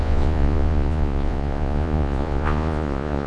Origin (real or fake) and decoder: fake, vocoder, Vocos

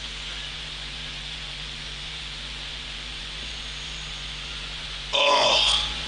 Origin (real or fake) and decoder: fake, vocoder, Vocos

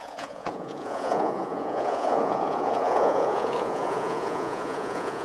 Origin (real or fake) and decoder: fake, vocoder, Vocos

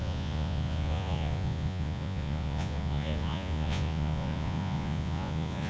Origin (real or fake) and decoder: fake, vocoder, Vocos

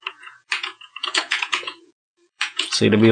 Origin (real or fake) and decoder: fake, vocoder, Vocos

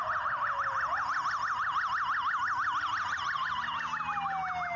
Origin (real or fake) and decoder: real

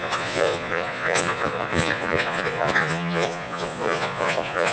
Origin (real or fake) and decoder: fake, vocoder, Vocos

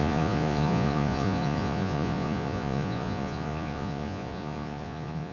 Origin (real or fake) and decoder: fake, vocoder, Vocos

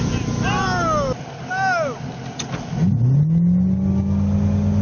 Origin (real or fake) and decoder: real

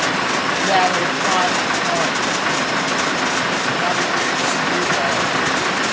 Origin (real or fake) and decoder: real